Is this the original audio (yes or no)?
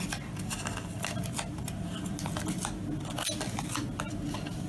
yes